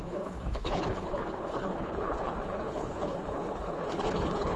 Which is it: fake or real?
fake